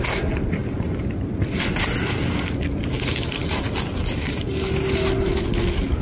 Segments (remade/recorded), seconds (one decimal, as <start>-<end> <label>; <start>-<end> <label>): 0.0-6.0 recorded